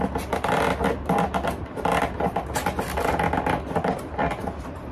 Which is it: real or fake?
real